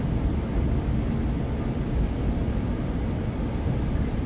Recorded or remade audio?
recorded